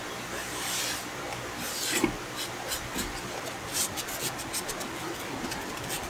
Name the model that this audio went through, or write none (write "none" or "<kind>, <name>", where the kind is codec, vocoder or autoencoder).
none